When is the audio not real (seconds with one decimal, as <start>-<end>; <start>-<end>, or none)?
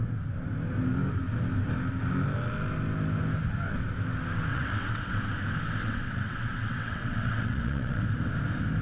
4.5-5.3; 5.8-8.0